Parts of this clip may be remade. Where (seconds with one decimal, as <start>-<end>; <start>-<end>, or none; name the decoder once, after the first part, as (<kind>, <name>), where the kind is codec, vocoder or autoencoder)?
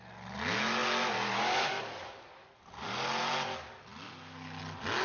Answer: none